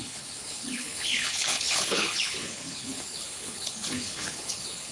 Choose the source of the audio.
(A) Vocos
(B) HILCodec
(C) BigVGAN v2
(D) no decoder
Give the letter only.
B